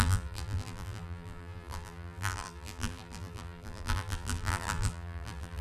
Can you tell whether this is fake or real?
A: fake